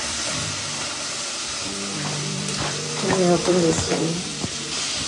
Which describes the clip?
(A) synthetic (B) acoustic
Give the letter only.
A